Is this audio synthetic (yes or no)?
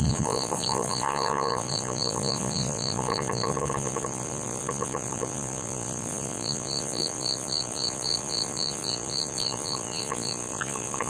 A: yes